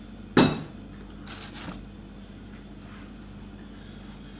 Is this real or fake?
real